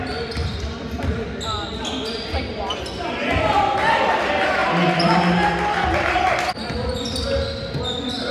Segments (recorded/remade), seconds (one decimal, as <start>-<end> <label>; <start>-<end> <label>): 0.0-8.3 recorded